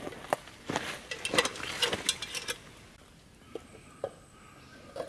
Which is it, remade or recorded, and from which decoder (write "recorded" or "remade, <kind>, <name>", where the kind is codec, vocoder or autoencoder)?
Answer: recorded